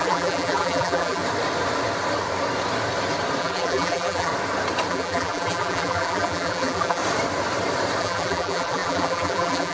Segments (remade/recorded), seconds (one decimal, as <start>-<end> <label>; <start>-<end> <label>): 0.0-1.2 remade; 1.2-3.4 recorded; 3.4-4.3 remade; 4.3-4.9 recorded; 4.9-7.0 remade; 7.0-8.0 recorded; 8.0-9.7 remade